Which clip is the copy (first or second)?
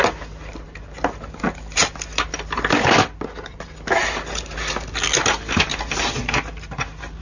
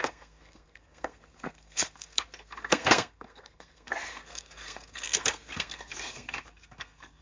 second